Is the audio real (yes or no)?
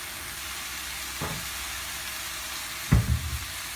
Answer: yes